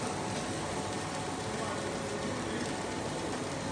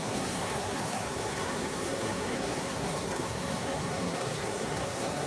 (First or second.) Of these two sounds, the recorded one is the first